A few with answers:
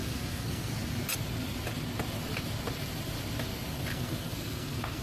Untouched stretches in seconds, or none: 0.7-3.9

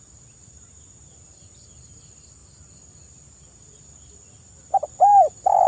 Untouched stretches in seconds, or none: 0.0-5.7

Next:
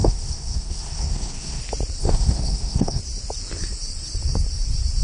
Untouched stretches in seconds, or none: 1.6-2.0; 3.0-5.0

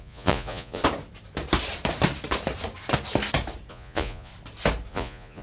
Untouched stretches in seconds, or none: 0.8-3.7; 4.3-4.9

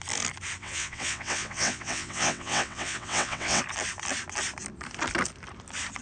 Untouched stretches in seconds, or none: 0.0-0.6; 3.6-6.0